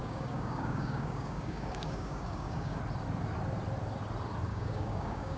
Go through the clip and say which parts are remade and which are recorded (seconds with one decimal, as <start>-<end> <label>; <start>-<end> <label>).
0.0-2.8 remade; 2.8-4.5 recorded; 4.5-5.4 remade